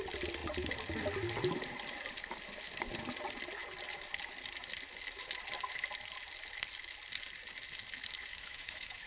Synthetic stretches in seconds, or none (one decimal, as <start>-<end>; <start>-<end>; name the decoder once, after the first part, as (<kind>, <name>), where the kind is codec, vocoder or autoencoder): 8.3-9.1 (autoencoder, DAC-VAE)